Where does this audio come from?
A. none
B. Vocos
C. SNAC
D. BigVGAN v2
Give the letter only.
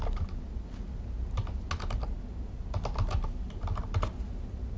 A